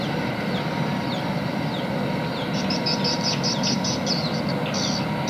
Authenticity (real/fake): real